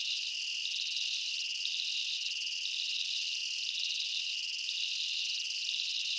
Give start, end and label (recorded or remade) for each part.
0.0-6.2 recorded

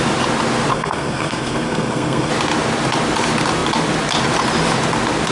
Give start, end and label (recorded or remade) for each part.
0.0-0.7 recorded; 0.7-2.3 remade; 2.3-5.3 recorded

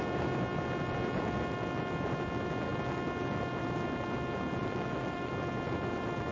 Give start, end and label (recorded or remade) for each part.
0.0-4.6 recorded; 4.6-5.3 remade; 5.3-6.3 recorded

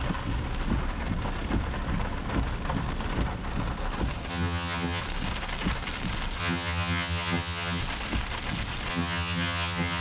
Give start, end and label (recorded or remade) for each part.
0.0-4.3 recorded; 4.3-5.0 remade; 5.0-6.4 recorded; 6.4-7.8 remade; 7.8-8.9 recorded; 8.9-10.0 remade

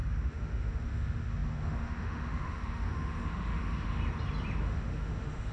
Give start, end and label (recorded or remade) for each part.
0.0-4.0 remade; 4.0-4.6 recorded; 4.6-5.5 remade